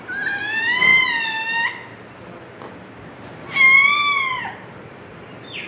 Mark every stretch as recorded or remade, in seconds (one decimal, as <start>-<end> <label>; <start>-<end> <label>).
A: 0.0-5.7 recorded